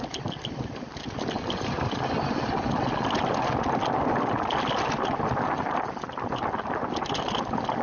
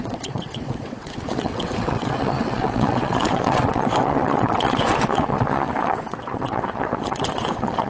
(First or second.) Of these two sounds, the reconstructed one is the second